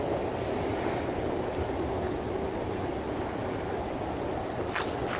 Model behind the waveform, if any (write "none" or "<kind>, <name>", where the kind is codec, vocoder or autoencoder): none